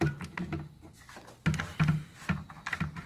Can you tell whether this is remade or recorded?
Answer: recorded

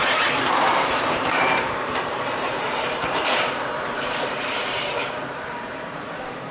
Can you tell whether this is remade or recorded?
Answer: remade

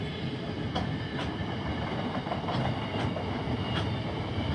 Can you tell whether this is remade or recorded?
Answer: recorded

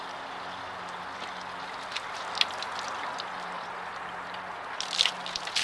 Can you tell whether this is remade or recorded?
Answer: recorded